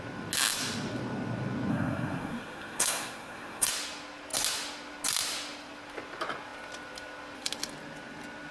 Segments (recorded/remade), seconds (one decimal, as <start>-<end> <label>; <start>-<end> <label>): 0.0-1.7 recorded; 1.7-3.7 remade; 3.7-8.5 recorded